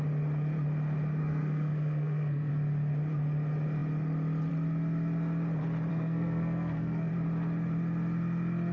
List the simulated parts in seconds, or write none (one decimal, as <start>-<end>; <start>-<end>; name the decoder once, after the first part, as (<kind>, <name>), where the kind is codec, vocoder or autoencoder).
1.2-2.5 (codec, SNAC); 5.9-7.1